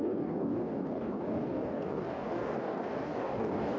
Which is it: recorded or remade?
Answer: remade